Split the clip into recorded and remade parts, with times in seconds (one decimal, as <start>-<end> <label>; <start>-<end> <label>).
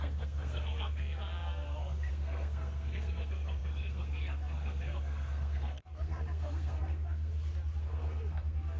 0.0-7.3 remade; 7.3-7.8 recorded; 7.8-8.8 remade